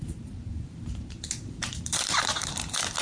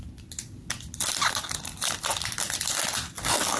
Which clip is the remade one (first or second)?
first